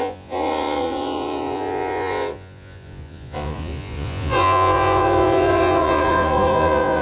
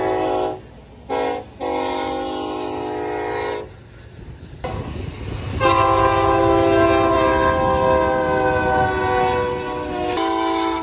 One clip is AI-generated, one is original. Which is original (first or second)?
second